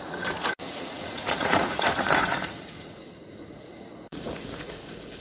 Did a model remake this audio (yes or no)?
yes